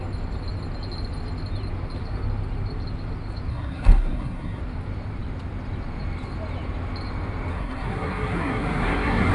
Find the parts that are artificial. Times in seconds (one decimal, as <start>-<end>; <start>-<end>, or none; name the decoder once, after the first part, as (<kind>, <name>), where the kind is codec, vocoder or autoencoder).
3.5-4.6 (codec, SNAC); 7.5-9.3